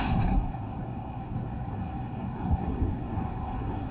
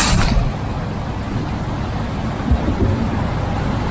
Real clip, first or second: second